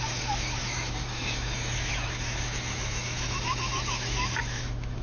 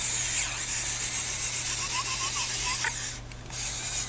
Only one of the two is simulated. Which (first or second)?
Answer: first